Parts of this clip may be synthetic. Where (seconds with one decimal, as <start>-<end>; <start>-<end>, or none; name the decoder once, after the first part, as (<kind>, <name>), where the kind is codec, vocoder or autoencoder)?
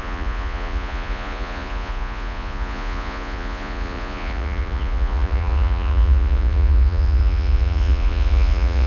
0.0-8.9 (vocoder, Vocos)